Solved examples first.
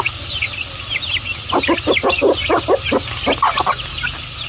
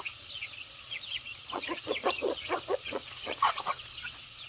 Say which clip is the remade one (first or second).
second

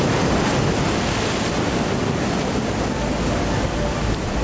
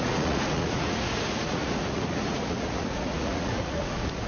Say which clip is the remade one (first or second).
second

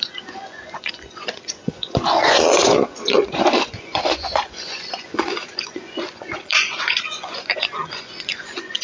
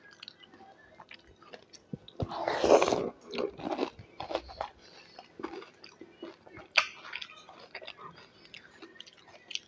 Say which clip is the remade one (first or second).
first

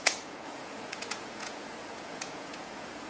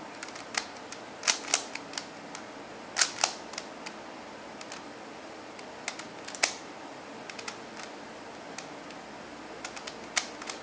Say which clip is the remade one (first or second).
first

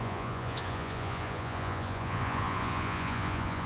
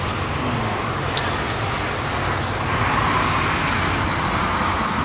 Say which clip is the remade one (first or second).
first